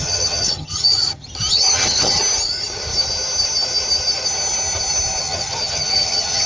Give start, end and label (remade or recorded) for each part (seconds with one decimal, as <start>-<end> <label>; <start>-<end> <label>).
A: 0.0-0.9 remade; 0.9-1.5 recorded; 1.5-2.2 remade; 2.2-5.2 recorded; 5.2-6.5 remade

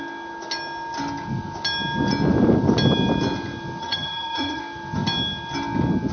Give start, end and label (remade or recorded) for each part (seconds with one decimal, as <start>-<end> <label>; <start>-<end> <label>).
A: 0.0-3.8 recorded; 3.8-4.6 remade; 4.6-6.1 recorded

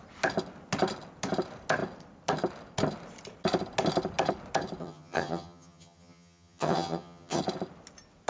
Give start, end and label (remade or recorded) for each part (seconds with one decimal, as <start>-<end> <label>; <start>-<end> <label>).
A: 0.0-4.8 recorded; 4.8-7.4 remade; 7.4-8.3 recorded

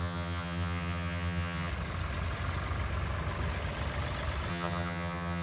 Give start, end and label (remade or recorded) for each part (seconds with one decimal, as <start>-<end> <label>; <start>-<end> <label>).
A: 0.0-1.7 remade; 1.7-4.5 recorded; 4.5-5.4 remade

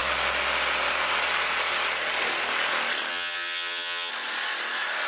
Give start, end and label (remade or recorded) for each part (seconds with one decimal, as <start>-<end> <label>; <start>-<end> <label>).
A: 0.0-3.1 recorded; 3.1-4.1 remade; 4.1-5.1 recorded

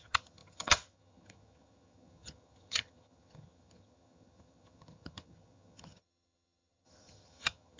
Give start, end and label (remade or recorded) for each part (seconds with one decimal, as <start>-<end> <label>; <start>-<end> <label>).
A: 0.0-7.8 remade

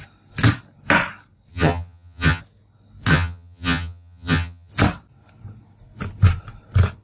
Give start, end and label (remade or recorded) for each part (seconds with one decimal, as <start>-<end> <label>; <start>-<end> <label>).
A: 0.0-1.5 recorded; 1.5-2.4 remade; 2.4-3.1 recorded; 3.1-4.7 remade; 4.7-7.0 recorded